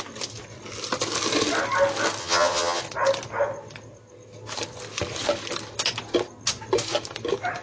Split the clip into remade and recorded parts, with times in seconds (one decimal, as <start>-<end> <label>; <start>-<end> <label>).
0.0-2.2 recorded; 2.2-2.8 remade; 2.8-7.6 recorded